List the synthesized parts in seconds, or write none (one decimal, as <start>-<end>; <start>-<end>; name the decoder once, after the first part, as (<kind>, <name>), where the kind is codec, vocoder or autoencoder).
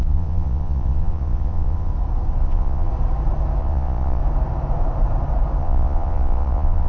0.0-1.9 (vocoder, Vocos); 2.4-2.9; 3.6-4.2; 5.6-6.9